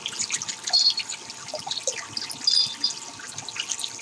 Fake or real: real